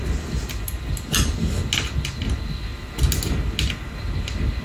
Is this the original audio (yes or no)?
yes